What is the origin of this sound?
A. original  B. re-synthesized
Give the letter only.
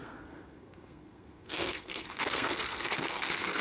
B